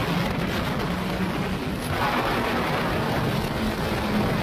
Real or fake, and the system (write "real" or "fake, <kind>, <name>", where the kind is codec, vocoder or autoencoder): real